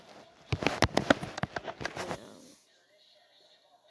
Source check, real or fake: real